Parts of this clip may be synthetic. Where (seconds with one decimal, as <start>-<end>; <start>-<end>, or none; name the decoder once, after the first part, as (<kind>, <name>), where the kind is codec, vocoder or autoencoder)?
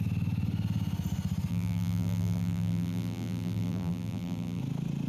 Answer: 1.5-4.6 (vocoder, BigVGAN v2)